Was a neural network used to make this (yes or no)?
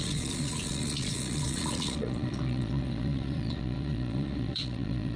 yes